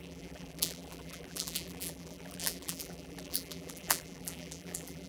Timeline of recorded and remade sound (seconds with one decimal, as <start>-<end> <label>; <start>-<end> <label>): 0.0-5.1 remade